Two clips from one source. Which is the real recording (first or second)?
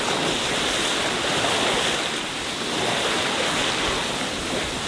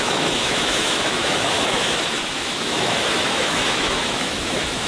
first